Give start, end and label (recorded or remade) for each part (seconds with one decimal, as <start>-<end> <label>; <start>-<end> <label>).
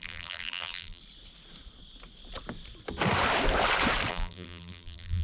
0.0-1.0 remade; 1.0-4.1 recorded; 4.1-5.2 remade